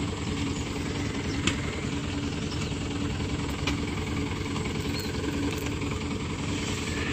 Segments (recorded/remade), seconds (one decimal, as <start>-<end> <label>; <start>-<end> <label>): 0.0-2.0 remade; 2.0-6.3 recorded; 6.3-7.1 remade